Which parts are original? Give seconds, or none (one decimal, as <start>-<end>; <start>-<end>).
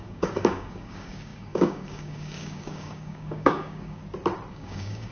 4.0-4.5